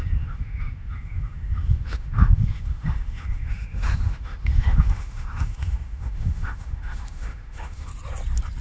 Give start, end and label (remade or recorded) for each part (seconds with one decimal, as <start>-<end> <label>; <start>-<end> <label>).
0.0-7.9 remade; 7.9-8.6 recorded